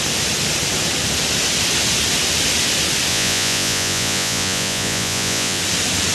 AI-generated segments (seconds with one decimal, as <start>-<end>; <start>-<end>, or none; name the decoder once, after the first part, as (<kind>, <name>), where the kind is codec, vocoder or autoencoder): 3.1-5.6 (vocoder, Vocos)